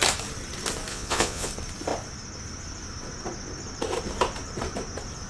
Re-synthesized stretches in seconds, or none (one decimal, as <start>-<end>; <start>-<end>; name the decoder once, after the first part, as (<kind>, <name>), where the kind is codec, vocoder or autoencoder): 0.9-1.5 (vocoder, Vocos)